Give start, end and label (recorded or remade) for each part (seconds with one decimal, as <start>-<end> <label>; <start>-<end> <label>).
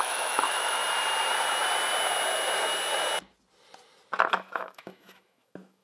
0.0-0.8 remade; 0.8-4.3 recorded; 4.3-5.8 remade